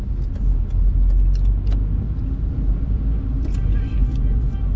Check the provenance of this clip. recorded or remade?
recorded